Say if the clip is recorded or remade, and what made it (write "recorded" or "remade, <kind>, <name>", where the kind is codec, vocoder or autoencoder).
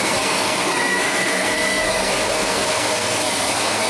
remade, codec, SNAC